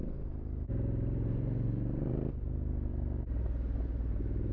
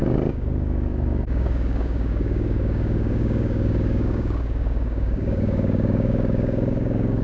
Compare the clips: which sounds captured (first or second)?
first